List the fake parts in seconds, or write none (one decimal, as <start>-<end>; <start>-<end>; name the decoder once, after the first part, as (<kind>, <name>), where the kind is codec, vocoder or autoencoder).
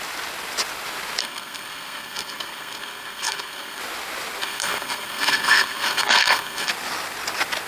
1.2-3.8 (codec, SNAC); 4.4-6.7